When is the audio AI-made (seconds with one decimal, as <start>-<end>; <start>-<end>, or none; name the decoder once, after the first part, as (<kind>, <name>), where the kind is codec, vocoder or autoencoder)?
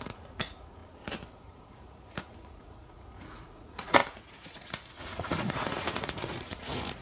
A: 0.0-0.8 (vocoder, Vocos); 1.4-7.0